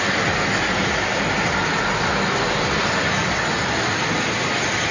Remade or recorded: recorded